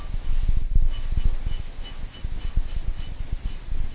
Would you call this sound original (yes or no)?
yes